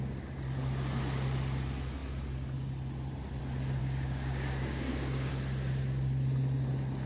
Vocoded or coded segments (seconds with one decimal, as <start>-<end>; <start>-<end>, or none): 3.8-5.3